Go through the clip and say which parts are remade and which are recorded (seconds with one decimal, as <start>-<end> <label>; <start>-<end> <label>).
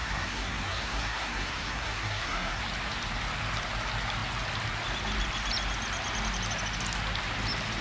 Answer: 0.0-2.6 remade; 2.6-7.8 recorded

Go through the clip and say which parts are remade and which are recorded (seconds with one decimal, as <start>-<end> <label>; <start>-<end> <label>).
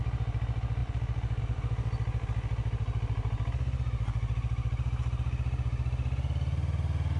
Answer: 0.0-7.2 recorded